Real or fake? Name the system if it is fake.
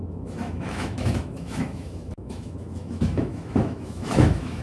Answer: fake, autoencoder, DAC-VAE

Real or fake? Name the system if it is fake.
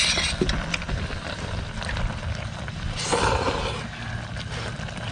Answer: real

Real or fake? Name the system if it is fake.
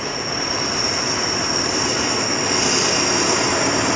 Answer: real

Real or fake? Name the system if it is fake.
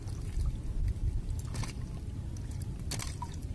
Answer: real